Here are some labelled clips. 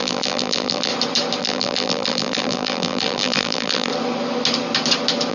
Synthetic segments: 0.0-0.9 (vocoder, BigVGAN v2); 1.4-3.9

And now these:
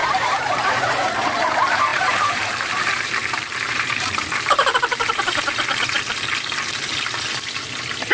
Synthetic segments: 0.0-4.7 (vocoder, BigVGAN v2)

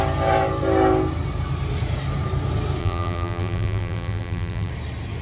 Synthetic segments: 2.8-4.7 (vocoder, BigVGAN v2)

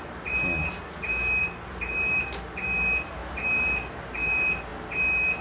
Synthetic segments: 1.4-2.3 (vocoder, BigVGAN v2); 3.2-4.3

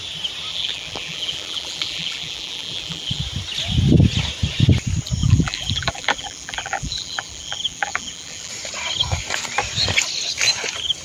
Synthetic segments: 0.5-3.2 (vocoder, BigVGAN v2); 5.2-8.5

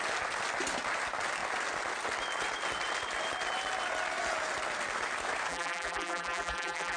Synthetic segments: 5.5-7.0 (vocoder, BigVGAN v2)